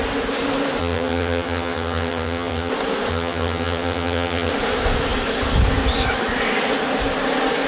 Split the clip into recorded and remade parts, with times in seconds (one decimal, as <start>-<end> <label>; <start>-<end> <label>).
0.0-0.8 recorded; 0.8-2.7 remade; 2.7-3.1 recorded; 3.1-4.5 remade; 4.5-7.7 recorded